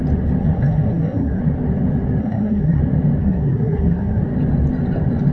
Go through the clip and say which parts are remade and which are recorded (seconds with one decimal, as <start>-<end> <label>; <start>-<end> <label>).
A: 0.0-0.4 recorded; 0.4-1.4 remade; 1.4-2.2 recorded; 2.2-2.8 remade; 2.8-3.2 recorded; 3.2-4.2 remade; 4.2-5.3 recorded